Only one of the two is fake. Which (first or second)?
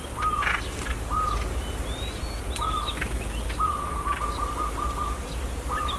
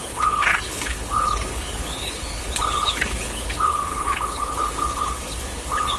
second